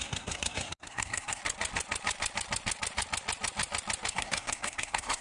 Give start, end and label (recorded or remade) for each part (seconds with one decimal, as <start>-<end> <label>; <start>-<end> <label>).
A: 0.0-1.4 remade; 1.4-4.1 recorded; 4.1-5.2 remade